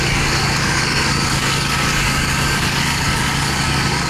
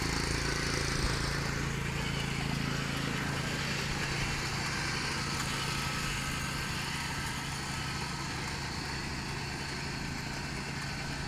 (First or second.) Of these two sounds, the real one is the second